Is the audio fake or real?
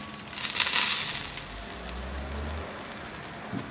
real